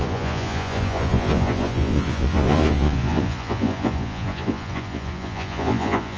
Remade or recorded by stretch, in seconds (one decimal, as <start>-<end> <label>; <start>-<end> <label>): 0.0-6.2 remade